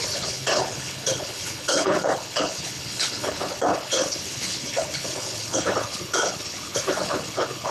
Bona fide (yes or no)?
no